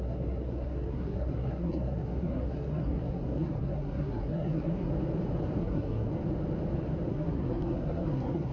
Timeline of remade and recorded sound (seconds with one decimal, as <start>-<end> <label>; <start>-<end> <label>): 0.0-4.9 remade; 4.9-5.6 recorded; 5.6-6.1 remade; 6.1-7.1 recorded; 7.1-8.5 remade